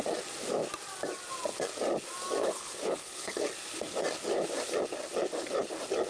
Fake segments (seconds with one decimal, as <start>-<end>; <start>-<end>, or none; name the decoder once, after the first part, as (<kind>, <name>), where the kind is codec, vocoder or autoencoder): 2.4-3.5 (codec, HILCodec)